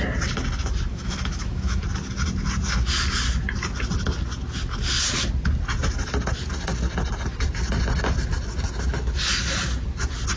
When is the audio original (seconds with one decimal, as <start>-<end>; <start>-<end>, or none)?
0.0-0.9; 1.8-10.4